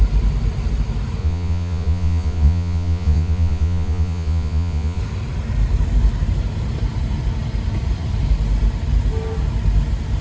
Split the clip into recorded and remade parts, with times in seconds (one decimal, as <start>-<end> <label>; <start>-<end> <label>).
0.0-1.2 recorded; 1.2-5.0 remade; 5.0-10.2 recorded